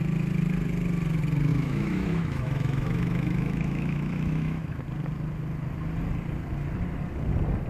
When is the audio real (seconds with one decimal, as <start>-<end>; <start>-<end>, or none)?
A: 0.0-1.5; 4.8-7.7